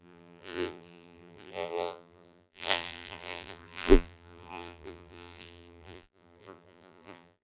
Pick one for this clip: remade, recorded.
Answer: remade